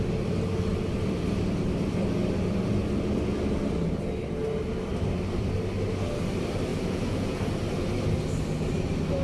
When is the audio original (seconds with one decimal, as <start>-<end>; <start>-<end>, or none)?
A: 0.0-6.7; 7.4-9.2